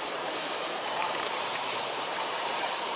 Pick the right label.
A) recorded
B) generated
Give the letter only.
B